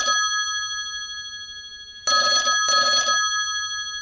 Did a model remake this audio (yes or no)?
no